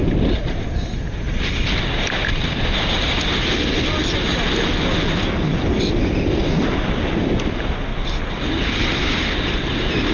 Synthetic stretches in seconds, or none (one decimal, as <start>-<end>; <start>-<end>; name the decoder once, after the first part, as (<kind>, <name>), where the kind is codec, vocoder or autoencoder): none